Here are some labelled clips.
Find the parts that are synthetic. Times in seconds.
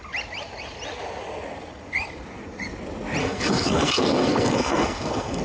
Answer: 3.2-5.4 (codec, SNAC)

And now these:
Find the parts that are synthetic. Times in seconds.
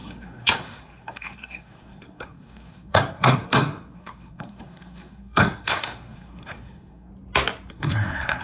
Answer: 0.0-7.1 (codec, SNAC); 7.7-8.4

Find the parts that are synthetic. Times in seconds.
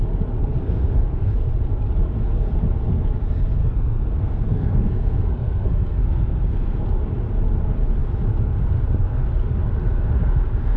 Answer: 0.6-1.3 (codec, SNAC); 3.6-6.8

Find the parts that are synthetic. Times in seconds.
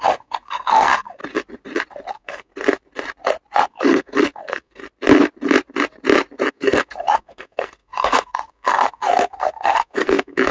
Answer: 0.0-1.2 (codec, SNAC); 2.1-2.5; 3.7-4.8; 6.5-10.5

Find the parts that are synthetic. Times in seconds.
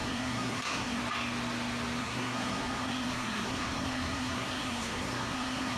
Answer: 0.0-1.0 (codec, SNAC); 2.0-5.8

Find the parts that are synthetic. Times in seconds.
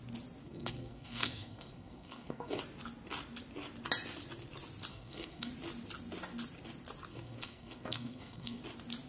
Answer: 0.4-2.6 (codec, SNAC); 4.9-5.5; 7.1-8.6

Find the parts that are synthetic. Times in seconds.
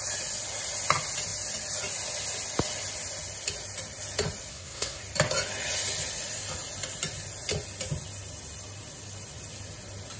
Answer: 4.5-5.0 (codec, SNAC)